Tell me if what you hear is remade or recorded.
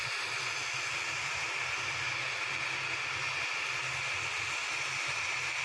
recorded